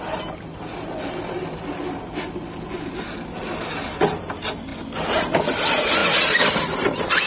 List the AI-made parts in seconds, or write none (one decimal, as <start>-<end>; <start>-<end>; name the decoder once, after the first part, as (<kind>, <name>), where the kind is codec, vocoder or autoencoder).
none